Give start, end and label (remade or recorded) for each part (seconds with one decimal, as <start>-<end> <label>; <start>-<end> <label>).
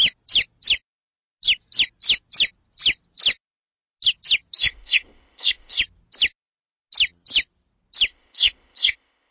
0.0-4.6 recorded; 4.6-5.8 remade; 5.8-8.1 recorded; 8.1-9.3 remade